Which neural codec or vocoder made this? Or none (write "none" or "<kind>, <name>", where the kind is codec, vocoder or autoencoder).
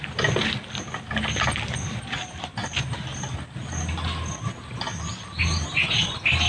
none